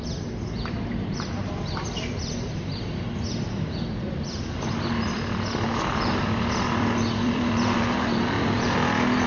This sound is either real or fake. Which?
fake